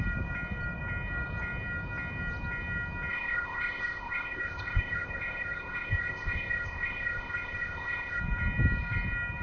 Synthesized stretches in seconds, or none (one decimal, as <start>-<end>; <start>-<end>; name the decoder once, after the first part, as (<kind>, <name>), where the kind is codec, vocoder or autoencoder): 3.1-8.2 (codec, ZipCodec)